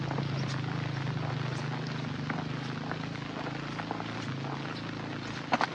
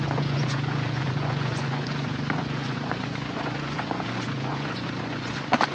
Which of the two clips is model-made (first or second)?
second